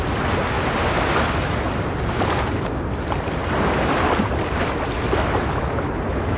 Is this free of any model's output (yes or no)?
yes